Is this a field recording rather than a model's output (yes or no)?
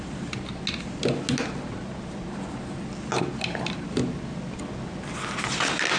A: yes